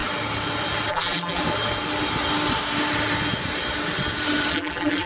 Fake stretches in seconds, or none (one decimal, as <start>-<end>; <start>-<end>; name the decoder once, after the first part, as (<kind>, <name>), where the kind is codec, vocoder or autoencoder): 0.9-1.4 (vocoder, BigVGAN v2); 4.5-5.1